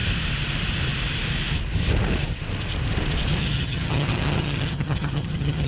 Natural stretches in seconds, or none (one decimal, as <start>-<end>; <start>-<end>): 0.0-3.4